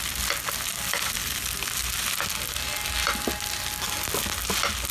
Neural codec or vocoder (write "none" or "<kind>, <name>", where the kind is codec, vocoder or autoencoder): none